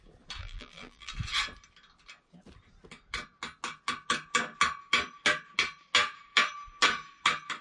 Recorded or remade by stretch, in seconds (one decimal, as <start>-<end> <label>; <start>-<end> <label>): 0.0-0.4 recorded; 0.4-1.1 remade; 1.1-7.6 recorded